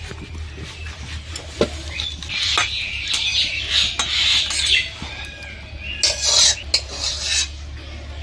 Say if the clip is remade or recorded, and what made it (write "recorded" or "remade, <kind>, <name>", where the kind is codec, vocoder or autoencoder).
recorded